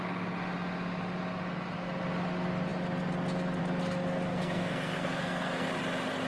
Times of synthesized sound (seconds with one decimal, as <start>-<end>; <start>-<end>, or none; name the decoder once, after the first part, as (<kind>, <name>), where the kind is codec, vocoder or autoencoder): 4.3-5.7 (codec, SNAC)